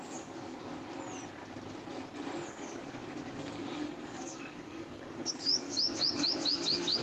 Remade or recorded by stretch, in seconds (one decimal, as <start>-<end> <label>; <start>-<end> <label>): 0.0-0.6 remade; 0.6-2.5 recorded; 2.5-7.0 remade

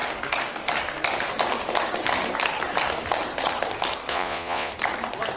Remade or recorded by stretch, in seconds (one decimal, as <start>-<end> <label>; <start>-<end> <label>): 0.0-4.1 recorded; 4.1-4.7 remade; 4.7-5.4 recorded